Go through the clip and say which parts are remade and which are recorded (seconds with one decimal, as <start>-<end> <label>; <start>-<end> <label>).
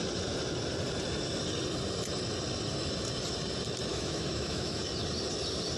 0.0-3.9 recorded; 3.9-4.8 remade; 4.8-5.8 recorded